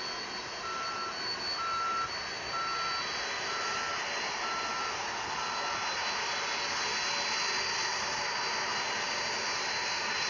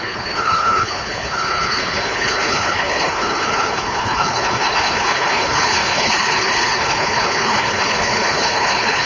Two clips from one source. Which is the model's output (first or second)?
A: second